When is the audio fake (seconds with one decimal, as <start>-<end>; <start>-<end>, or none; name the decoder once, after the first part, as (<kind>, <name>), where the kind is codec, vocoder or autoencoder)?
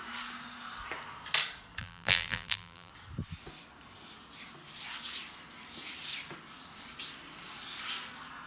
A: 1.8-2.9 (vocoder, BigVGAN v2)